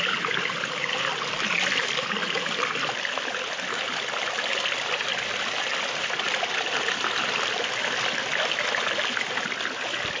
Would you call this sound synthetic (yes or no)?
no